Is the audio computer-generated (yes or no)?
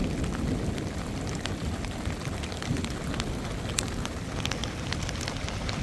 no